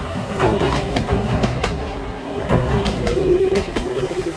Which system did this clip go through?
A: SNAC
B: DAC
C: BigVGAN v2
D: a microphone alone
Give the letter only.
A